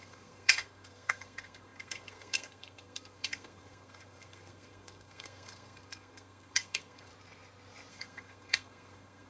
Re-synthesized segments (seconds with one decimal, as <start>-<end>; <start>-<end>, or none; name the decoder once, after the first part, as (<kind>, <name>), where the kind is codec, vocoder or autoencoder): 0.0-7.1 (codec, SNAC); 7.9-9.3